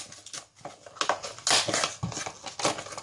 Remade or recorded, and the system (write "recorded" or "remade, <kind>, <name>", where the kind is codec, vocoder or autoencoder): recorded